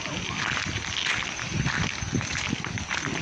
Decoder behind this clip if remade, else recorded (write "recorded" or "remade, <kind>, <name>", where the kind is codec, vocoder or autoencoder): recorded